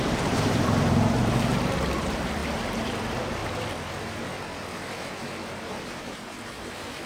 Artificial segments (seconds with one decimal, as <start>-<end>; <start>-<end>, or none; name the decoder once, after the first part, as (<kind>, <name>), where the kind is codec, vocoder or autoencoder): 0.0-3.4 (vocoder, BigVGAN v2); 5.7-7.1

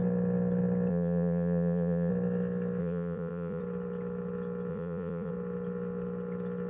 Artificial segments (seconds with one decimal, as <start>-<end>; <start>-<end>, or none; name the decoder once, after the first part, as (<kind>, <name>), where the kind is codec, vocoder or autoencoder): 0.9-2.1 (vocoder, Vocos); 2.8-3.6; 4.7-5.3